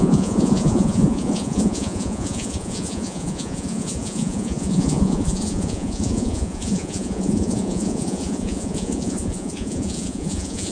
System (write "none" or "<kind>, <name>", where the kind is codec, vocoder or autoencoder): vocoder, Vocos